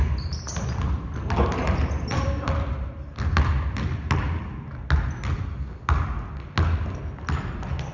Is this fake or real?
real